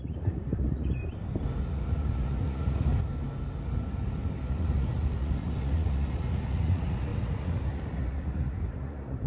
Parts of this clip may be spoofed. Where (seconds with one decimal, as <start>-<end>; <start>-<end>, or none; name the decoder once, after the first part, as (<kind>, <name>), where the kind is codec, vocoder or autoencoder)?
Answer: 0.0-1.0 (vocoder, Vocos); 1.6-3.1; 4.4-9.3